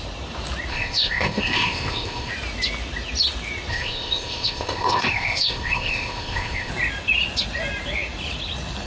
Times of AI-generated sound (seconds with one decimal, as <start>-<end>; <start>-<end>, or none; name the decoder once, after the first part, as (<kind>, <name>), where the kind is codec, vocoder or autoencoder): 0.7-2.3 (codec, ZipCodec); 3.7-6.7